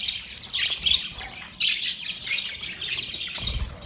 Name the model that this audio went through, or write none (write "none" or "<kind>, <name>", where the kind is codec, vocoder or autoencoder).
none